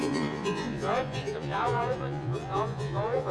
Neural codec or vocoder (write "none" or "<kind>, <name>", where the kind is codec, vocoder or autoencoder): vocoder, Vocos